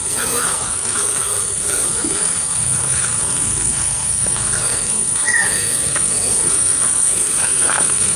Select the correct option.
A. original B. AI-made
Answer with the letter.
B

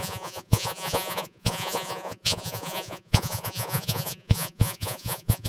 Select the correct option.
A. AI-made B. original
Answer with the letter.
A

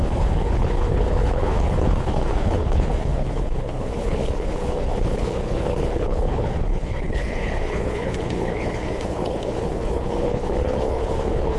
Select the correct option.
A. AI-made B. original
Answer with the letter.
A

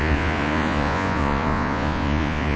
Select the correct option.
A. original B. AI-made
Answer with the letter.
B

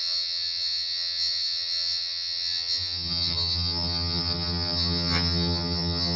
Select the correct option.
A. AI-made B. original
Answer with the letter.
A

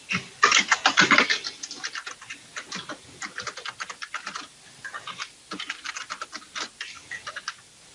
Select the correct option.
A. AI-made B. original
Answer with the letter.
B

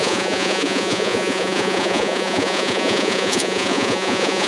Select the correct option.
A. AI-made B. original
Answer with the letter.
A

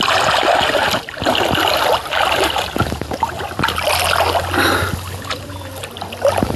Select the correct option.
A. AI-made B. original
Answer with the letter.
B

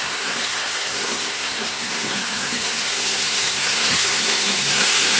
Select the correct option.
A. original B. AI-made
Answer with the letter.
B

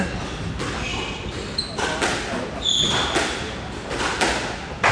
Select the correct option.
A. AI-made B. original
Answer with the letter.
B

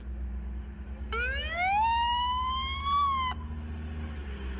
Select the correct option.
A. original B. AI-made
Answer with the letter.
A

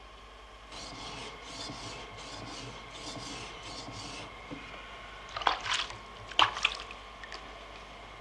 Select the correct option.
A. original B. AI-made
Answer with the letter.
A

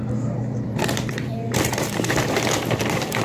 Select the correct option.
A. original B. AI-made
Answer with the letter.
B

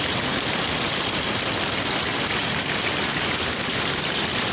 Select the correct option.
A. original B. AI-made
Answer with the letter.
B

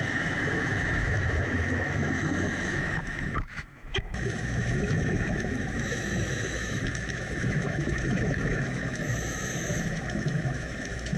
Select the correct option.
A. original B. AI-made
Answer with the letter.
B